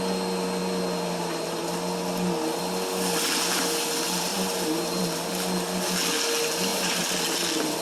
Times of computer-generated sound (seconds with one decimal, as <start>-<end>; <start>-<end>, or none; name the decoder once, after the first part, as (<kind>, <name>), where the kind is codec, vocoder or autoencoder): 4.3-5.0 (vocoder, BigVGAN v2); 6.7-7.2